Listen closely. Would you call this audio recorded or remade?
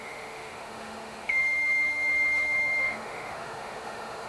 remade